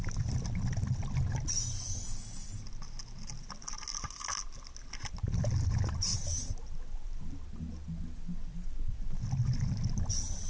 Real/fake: real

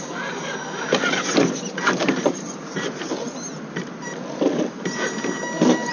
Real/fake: real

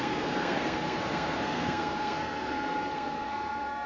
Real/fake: fake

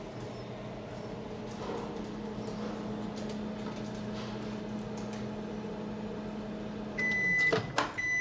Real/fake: real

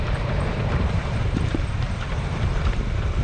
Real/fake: fake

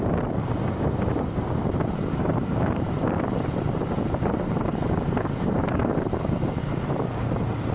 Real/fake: fake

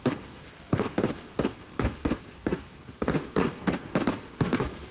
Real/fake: fake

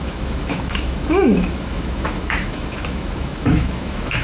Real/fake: fake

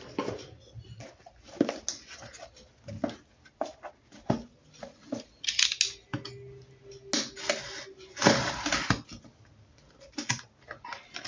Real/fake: real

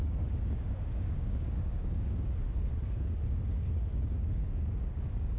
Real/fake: fake